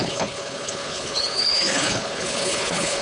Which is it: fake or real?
fake